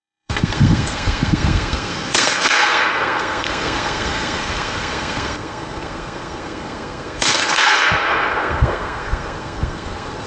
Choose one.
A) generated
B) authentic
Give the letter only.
A